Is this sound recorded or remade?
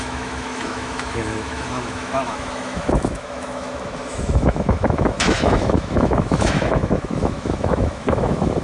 remade